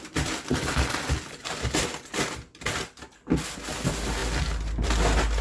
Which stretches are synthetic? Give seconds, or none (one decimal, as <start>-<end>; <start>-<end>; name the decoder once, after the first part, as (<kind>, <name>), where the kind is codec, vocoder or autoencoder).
none